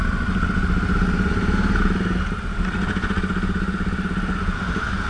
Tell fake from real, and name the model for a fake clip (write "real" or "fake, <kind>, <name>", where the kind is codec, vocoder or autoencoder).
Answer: real